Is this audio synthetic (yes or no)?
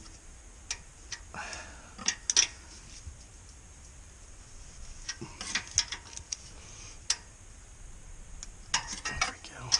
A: no